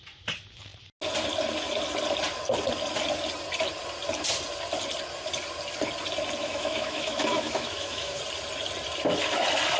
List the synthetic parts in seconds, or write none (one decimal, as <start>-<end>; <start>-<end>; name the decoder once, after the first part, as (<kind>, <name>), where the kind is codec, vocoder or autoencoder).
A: 6.4-8.2 (autoencoder, DAC-VAE)